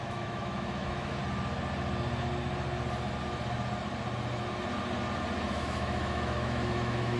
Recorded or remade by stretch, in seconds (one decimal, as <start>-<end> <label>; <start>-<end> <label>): 0.0-1.2 remade; 1.2-5.5 recorded; 5.5-7.2 remade